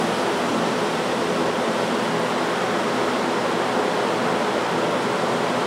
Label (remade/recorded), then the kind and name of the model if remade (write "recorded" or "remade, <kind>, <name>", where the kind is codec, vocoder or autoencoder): recorded